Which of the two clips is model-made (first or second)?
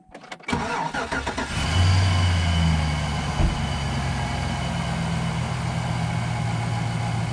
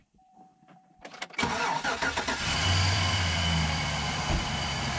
second